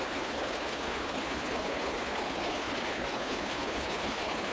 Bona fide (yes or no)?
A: no